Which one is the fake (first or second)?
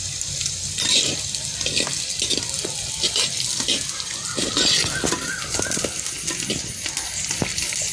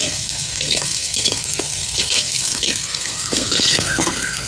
second